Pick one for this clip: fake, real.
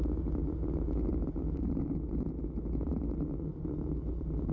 real